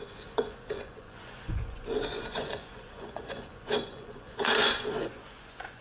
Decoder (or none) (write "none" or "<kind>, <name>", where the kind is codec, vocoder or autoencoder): vocoder, Vocos